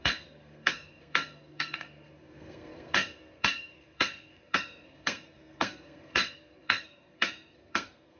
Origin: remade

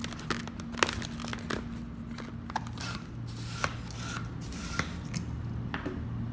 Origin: recorded